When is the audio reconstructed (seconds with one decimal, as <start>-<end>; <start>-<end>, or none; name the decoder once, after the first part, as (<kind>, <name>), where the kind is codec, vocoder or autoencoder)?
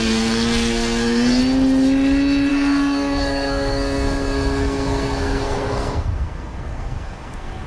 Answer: 0.0-1.4 (codec, SNAC); 2.5-7.7